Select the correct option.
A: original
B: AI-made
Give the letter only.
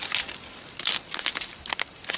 A